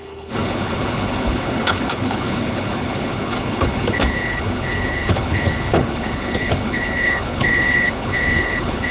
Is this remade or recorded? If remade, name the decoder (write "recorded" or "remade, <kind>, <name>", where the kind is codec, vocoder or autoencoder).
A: remade, codec, HILCodec